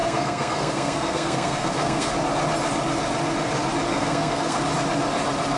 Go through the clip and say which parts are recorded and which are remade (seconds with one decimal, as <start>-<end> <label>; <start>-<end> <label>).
0.0-2.1 remade; 2.1-3.9 recorded; 3.9-4.6 remade; 4.6-5.6 recorded